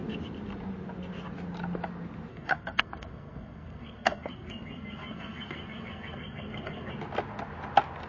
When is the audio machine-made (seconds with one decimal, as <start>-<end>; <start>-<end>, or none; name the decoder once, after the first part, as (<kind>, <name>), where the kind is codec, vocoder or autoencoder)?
2.3-6.9 (codec, SNAC)